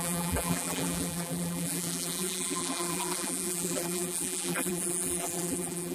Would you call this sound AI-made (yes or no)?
yes